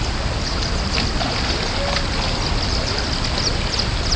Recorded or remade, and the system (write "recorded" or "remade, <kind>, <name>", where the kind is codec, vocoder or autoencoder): recorded